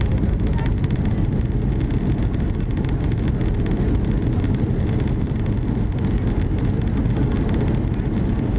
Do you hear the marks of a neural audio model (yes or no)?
no